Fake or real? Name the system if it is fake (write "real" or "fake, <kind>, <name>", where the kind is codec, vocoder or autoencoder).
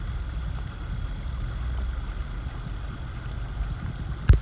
real